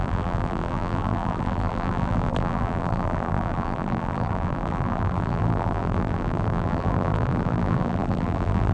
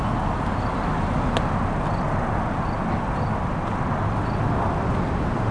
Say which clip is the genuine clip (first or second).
second